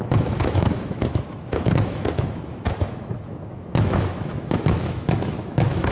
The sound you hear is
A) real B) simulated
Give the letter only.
B